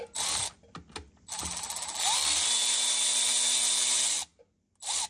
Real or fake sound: real